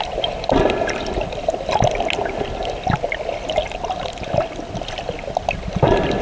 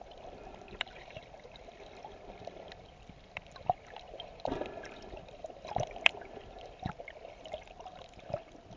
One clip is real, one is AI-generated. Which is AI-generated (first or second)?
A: second